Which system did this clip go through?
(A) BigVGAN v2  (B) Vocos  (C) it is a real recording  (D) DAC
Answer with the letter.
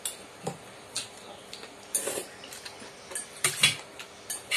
C